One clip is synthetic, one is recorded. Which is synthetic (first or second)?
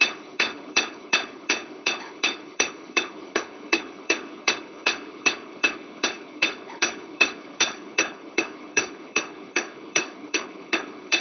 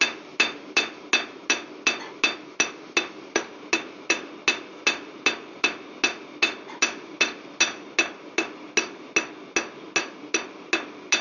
first